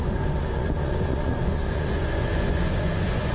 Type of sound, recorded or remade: remade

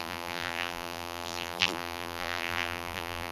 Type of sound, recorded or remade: remade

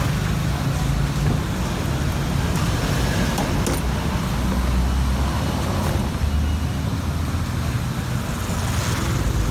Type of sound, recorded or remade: recorded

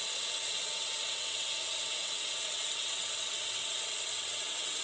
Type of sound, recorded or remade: remade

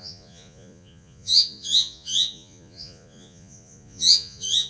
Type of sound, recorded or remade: remade